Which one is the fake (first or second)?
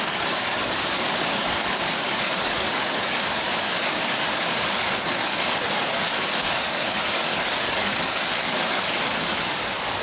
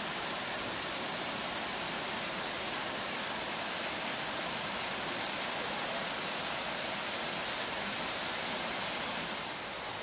first